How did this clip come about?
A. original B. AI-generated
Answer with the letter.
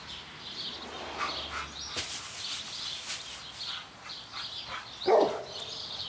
A